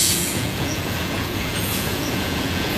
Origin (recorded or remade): remade